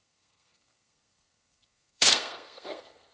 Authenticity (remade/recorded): remade